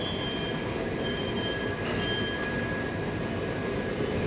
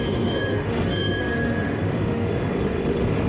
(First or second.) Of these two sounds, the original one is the first